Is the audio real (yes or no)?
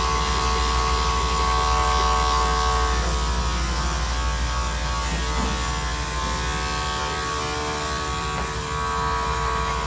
yes